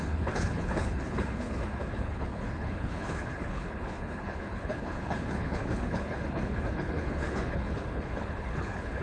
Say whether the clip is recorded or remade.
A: remade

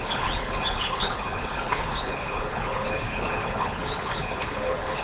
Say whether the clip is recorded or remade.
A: remade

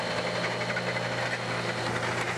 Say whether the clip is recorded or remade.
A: recorded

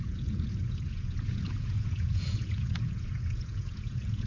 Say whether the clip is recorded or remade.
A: remade